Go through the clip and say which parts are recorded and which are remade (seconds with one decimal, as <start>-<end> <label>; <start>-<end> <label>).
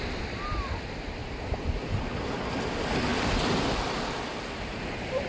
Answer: 0.0-5.3 recorded